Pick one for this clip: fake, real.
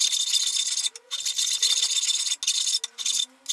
real